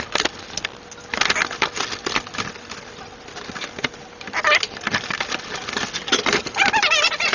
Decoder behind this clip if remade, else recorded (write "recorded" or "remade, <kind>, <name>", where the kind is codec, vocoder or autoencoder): recorded